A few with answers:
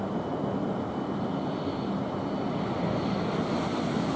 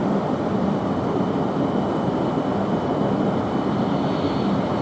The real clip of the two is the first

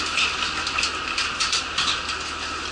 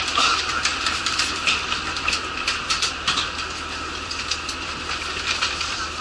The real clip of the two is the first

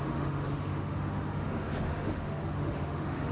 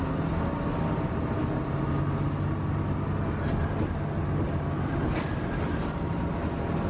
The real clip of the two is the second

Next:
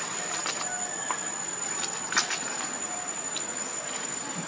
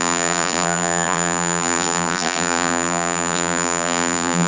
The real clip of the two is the first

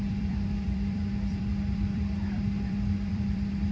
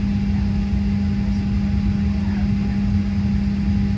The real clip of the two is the second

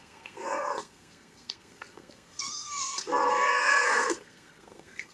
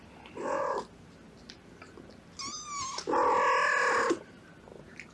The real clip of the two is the second